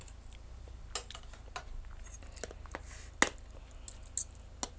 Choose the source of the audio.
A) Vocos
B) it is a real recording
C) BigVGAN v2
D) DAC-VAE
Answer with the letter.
B